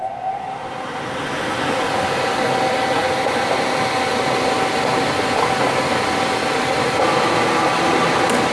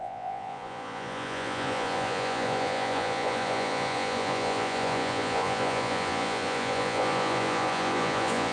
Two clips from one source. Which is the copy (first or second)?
second